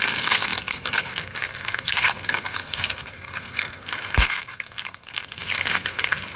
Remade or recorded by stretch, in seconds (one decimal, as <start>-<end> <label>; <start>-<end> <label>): 0.0-6.4 remade